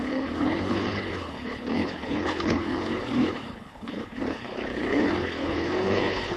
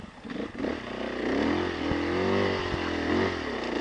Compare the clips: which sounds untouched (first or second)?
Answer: second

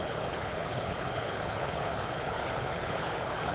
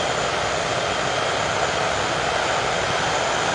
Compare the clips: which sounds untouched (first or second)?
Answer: second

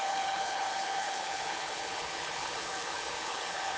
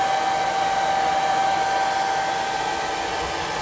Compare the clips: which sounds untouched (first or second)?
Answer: second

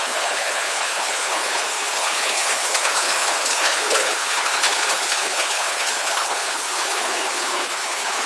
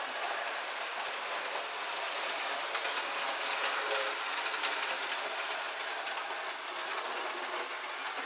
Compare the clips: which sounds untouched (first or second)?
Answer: second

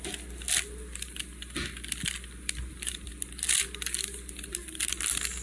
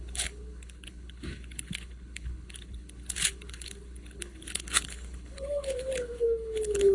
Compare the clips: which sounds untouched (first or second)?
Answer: first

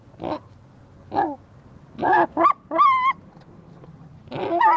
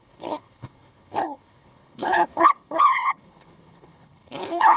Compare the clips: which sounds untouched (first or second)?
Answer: first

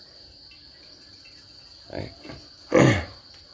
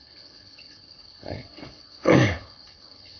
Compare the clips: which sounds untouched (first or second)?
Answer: first